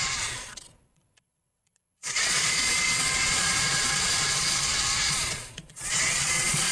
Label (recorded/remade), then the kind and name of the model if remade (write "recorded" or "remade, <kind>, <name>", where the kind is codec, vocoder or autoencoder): remade, vocoder, Vocos